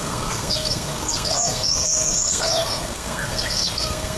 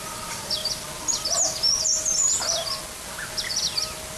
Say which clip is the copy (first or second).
first